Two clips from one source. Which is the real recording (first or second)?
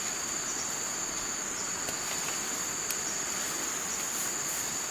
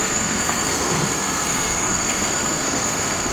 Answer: first